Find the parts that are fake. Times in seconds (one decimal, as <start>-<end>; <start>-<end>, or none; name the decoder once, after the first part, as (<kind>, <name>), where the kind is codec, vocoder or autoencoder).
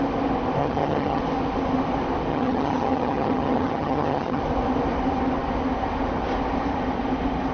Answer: 0.6-1.2 (vocoder, HiFi-GAN); 2.3-4.4